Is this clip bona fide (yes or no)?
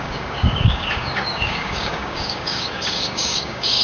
no